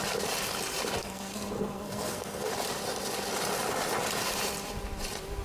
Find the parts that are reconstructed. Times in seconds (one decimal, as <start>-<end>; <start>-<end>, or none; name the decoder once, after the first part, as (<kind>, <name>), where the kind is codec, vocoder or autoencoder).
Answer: 1.0-2.5 (codec, SNAC)